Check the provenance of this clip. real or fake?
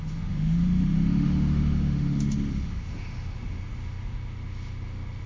fake